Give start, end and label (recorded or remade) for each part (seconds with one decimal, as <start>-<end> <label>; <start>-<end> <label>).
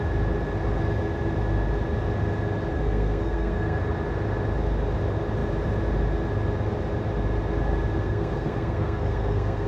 0.0-2.7 recorded; 2.7-3.8 remade; 3.8-8.0 recorded; 8.0-9.7 remade